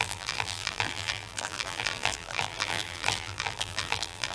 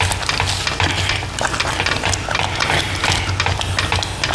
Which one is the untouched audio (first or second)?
second